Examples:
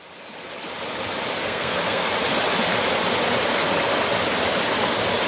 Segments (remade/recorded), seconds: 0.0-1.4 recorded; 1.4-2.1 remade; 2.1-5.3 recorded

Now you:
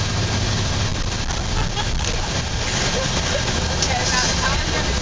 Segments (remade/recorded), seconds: 0.0-5.0 recorded

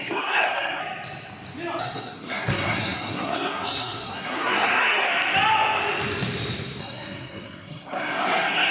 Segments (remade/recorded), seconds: 0.0-0.8 remade; 0.8-1.8 recorded; 1.8-5.1 remade; 5.1-6.8 recorded; 6.8-8.7 remade